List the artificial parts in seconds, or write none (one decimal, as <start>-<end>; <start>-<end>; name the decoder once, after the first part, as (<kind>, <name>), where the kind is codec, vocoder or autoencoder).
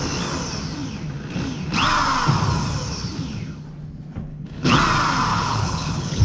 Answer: 4.3-4.8 (codec, HILCodec); 5.3-6.2